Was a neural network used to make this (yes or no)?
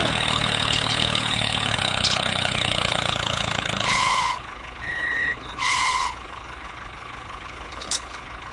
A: yes